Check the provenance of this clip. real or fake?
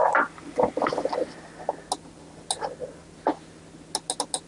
real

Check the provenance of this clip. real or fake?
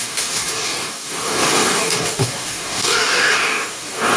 fake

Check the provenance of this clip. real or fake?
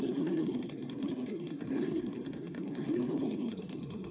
fake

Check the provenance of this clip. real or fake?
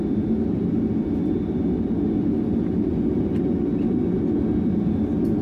real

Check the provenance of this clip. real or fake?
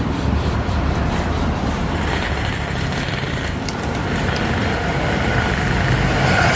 fake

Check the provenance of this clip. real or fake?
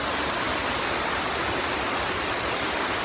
real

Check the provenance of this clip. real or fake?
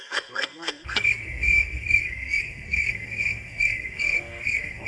fake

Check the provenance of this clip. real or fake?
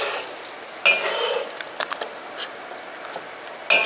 real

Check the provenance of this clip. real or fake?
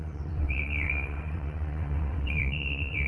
fake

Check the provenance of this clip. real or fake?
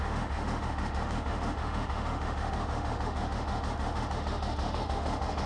fake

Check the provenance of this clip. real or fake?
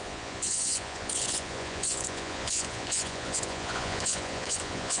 fake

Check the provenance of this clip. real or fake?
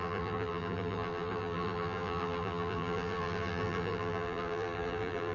fake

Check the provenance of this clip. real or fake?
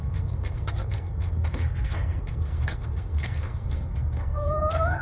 fake